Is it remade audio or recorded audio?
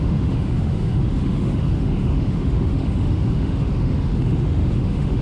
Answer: remade